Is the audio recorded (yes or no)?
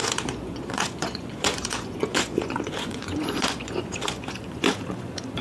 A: no